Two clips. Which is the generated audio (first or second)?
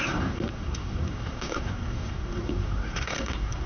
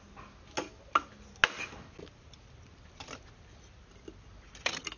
first